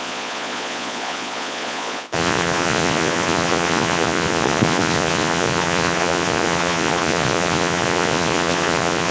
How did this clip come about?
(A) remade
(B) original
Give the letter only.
A